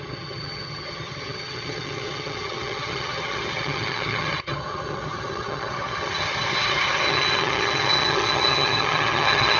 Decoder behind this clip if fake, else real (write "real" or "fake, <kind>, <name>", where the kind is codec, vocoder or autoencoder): fake, vocoder, HiFi-GAN